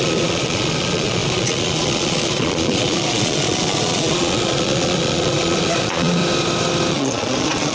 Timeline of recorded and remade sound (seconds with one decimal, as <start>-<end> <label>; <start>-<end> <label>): 0.0-6.2 remade; 6.2-6.9 recorded; 6.9-7.7 remade